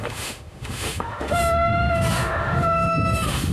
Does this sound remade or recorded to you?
remade